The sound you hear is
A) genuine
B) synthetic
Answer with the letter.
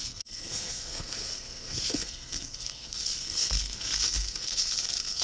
B